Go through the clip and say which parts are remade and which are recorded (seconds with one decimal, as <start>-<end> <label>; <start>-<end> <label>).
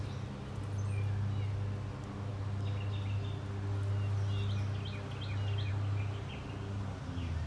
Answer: 0.0-7.5 recorded